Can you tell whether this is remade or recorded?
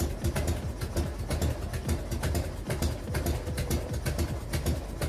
recorded